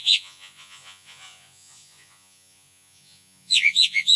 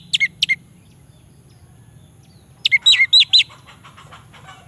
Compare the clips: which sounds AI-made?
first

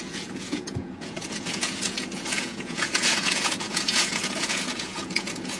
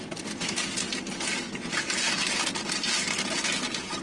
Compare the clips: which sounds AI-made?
first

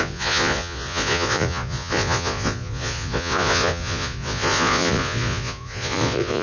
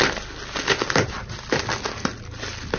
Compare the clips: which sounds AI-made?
first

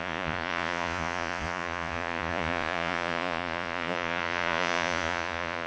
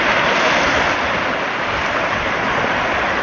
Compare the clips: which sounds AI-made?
first